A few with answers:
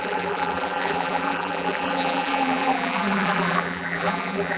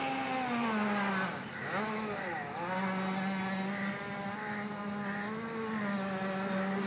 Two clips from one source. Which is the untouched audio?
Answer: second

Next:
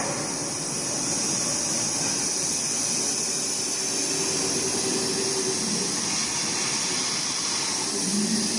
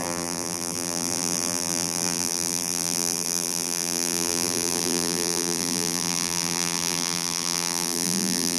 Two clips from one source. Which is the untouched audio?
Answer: first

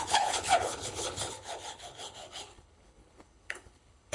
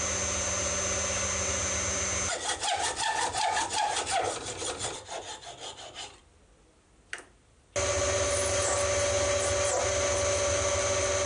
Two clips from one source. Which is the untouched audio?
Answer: second